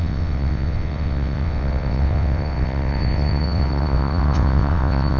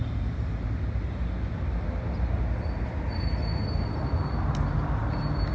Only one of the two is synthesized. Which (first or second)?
first